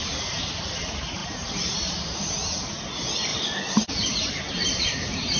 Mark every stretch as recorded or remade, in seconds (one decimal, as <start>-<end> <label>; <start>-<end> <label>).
0.0-1.2 recorded; 1.2-2.5 remade; 2.5-3.3 recorded; 3.3-5.4 remade